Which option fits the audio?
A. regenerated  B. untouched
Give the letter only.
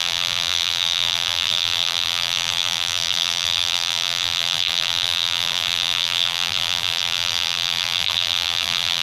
A